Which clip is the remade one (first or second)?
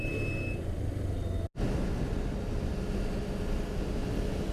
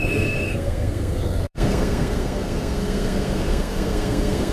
second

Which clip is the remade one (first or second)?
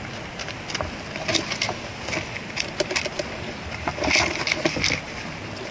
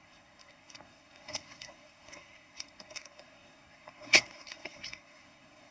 second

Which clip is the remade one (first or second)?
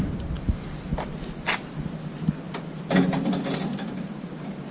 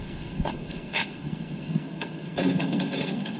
second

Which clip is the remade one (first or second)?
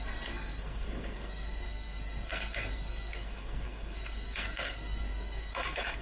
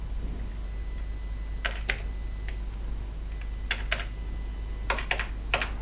first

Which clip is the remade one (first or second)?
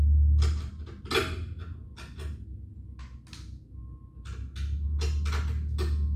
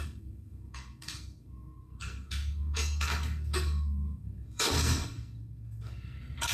second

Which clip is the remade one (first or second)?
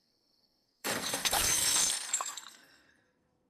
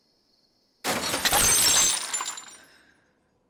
first